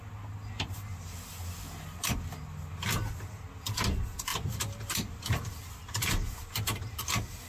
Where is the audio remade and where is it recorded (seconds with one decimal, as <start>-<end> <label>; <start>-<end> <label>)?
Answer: 0.0-4.3 recorded; 4.3-7.0 remade; 7.0-7.5 recorded